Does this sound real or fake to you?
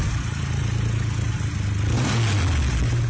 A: real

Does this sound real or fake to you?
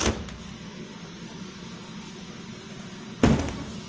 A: real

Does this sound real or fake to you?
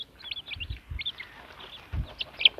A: real